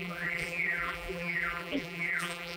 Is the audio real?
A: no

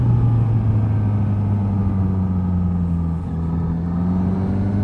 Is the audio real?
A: yes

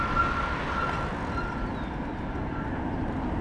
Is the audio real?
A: yes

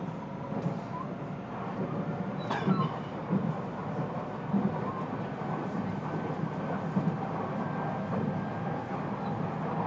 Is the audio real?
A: yes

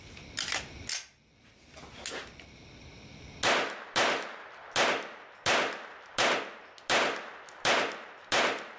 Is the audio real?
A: yes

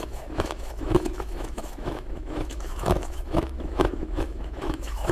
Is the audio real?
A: no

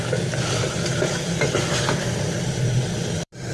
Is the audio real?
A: no